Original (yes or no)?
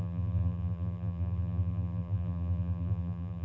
no